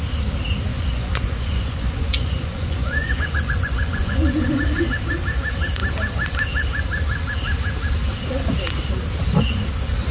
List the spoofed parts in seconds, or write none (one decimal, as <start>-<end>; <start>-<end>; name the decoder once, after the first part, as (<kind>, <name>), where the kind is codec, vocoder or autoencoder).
0.7-4.8 (vocoder, Vocos)

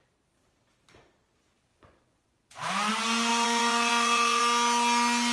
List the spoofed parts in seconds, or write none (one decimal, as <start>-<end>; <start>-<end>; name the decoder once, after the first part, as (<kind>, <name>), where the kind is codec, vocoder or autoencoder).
1.7-2.9 (vocoder, Vocos); 3.3-4.4

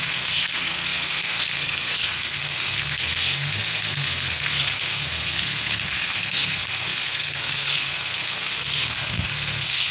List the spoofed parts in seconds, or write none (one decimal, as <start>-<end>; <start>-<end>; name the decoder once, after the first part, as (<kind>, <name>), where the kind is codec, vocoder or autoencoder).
0.0-9.9 (codec, SNAC)

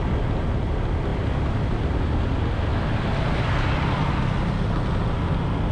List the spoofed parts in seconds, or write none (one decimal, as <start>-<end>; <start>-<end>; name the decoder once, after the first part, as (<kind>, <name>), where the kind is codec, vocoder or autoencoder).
1.1-2.2 (vocoder, BigVGAN v2); 2.7-4.1

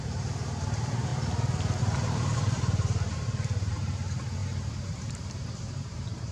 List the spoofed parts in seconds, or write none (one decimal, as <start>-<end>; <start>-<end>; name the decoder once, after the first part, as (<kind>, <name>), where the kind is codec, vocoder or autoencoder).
0.0-1.1 (vocoder, BigVGAN v2); 1.8-4.4; 4.9-6.3

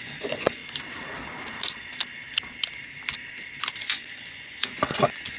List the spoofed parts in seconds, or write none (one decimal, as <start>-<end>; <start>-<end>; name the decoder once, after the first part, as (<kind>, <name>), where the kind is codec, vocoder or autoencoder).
0.0-0.6 (vocoder, Vocos); 3.8-5.4

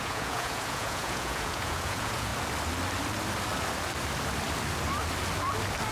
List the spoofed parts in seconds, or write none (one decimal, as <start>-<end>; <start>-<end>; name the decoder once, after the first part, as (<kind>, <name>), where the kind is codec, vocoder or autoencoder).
0.0-2.3 (vocoder, Vocos)

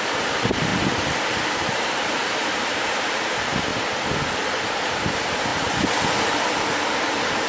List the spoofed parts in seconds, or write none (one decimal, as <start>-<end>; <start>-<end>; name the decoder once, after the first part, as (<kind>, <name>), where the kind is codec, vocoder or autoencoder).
0.0-0.7 (vocoder, BigVGAN v2); 1.7-3.7; 4.7-5.5